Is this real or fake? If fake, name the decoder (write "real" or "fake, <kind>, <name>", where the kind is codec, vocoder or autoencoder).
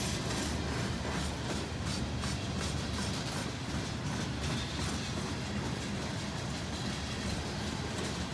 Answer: real